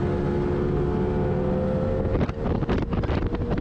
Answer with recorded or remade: recorded